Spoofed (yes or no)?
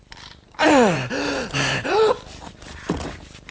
yes